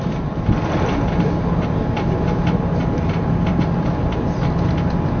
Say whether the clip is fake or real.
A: fake